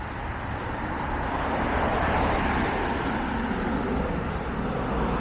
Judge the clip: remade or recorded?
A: recorded